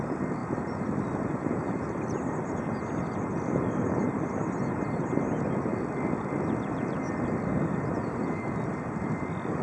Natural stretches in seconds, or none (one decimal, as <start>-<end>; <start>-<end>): 0.4-2.0; 4.4-7.0